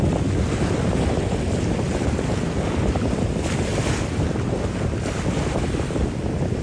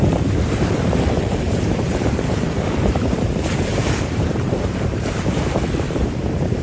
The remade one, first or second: second